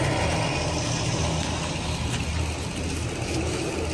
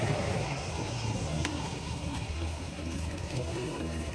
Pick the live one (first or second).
first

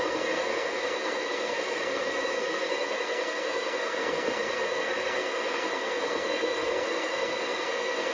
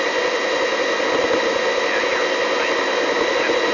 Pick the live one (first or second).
second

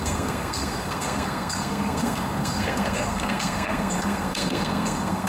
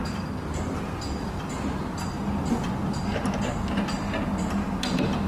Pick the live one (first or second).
second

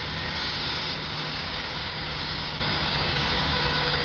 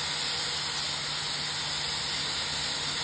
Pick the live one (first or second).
second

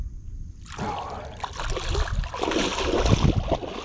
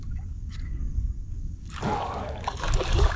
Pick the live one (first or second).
first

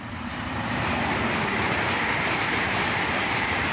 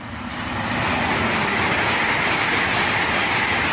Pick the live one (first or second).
second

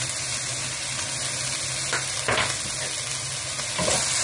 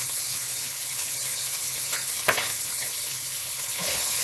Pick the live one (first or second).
first